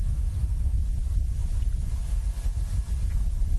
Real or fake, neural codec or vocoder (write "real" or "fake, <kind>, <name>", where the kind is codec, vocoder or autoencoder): real